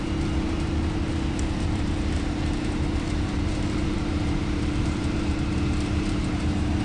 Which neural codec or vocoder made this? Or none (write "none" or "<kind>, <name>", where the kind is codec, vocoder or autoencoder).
vocoder, BigVGAN v2